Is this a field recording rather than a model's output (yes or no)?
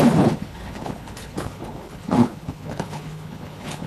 no